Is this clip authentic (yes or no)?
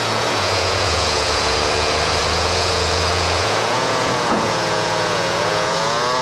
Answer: no